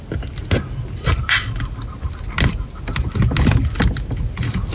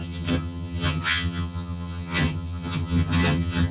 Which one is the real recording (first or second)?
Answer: first